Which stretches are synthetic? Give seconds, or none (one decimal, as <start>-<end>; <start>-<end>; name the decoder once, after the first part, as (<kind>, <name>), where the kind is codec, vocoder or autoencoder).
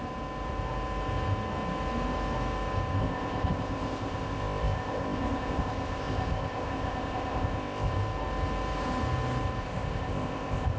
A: 3.0-7.9 (codec, ZipCodec); 9.6-10.8